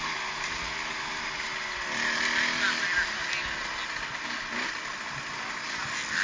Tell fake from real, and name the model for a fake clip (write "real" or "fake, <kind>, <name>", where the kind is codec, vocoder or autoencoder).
real